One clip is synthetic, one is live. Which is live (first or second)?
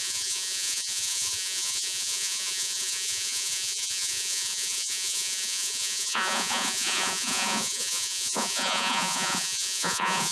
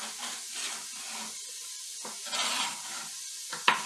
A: second